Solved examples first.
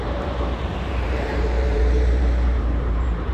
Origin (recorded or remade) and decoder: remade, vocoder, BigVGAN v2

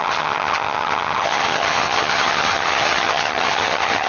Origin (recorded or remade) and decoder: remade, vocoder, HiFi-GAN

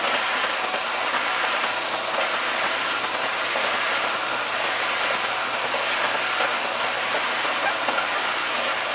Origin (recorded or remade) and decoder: recorded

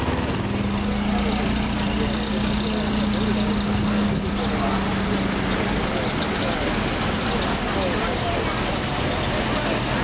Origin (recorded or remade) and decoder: recorded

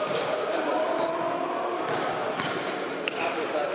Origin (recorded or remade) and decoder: recorded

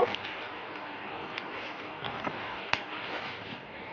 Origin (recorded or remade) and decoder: remade, codec, DAC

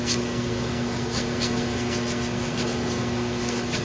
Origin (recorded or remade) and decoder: remade, codec, SNAC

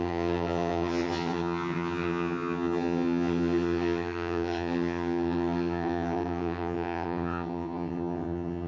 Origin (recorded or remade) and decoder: remade, vocoder, HiFi-GAN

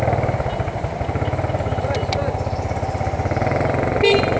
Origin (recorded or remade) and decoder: recorded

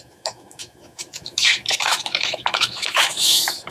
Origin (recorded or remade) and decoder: remade, autoencoder, DAC-VAE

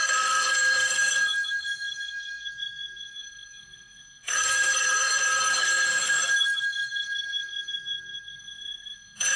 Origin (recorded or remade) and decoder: remade, codec, SNAC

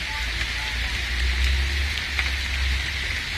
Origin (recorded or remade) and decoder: recorded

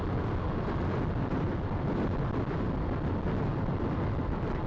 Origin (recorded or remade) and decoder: recorded